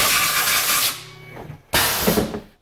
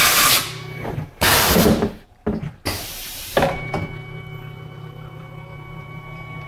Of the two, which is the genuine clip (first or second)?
first